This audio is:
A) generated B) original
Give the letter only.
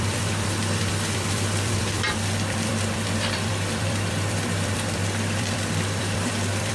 A